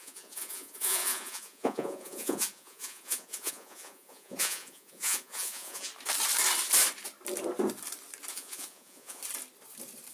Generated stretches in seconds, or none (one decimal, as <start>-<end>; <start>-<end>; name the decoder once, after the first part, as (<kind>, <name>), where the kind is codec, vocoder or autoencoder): 0.0-5.9 (vocoder, Vocos); 8.3-9.2